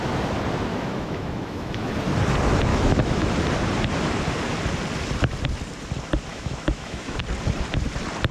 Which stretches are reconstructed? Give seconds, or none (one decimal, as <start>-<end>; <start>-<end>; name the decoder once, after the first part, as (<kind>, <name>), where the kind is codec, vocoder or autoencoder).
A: 0.7-1.9 (autoencoder, DAC-VAE); 2.7-3.3; 6.3-7.2